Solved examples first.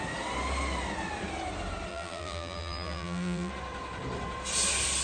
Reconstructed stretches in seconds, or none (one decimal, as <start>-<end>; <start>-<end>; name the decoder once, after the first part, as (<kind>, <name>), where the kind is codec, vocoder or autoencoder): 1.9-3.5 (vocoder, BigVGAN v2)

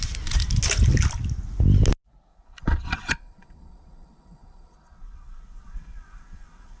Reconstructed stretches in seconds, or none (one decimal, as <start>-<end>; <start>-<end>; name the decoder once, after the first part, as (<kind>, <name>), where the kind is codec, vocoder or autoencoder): 2.3-6.8 (vocoder, WaveNeXt)

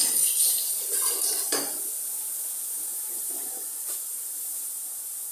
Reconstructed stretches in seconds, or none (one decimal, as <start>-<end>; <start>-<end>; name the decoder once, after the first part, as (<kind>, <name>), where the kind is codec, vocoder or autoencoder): 0.0-1.2 (vocoder, BigVGAN v2); 2.9-5.3

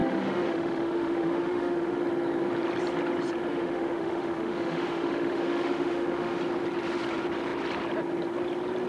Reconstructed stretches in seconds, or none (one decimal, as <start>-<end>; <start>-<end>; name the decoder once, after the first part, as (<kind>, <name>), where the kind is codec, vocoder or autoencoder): 0.0-2.0 (autoencoder, DAC-VAE); 3.5-6.4

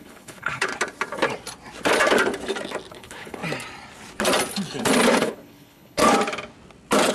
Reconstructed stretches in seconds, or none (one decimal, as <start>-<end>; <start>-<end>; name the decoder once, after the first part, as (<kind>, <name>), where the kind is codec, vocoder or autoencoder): 0.0-0.7 (codec, HILCodec); 2.9-3.4; 5.2-6.0